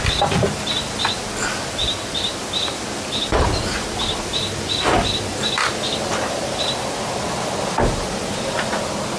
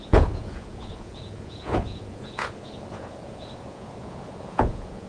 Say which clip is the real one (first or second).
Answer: first